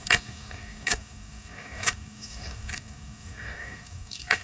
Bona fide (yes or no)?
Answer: no